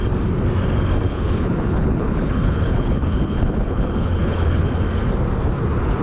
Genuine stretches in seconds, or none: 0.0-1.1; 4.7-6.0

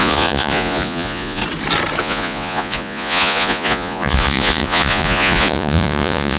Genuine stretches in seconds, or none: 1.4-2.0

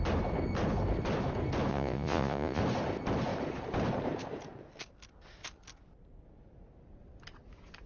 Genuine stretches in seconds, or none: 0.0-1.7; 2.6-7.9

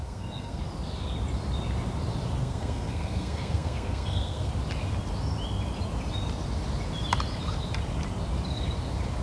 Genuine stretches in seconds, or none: 0.6-2.4; 4.5-9.2

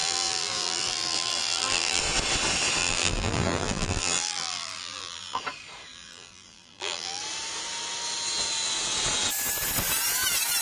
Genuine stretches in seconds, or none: 2.0-2.8; 5.4-5.9; 7.2-10.6

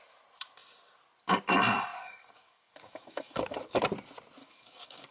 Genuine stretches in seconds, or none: 0.0-1.9; 3.8-4.4